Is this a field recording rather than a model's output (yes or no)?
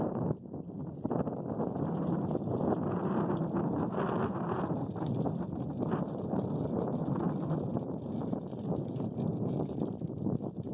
yes